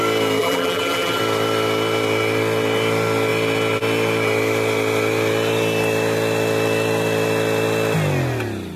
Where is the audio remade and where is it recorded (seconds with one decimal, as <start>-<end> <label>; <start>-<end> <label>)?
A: 0.0-0.4 recorded; 0.4-1.2 remade; 1.2-8.8 recorded